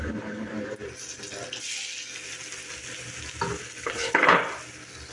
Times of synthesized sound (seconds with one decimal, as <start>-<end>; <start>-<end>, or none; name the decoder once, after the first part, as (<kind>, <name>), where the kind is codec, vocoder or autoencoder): 0.0-0.5 (codec, HILCodec); 3.6-4.4